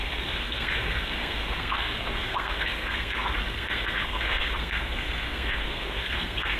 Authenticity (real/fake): fake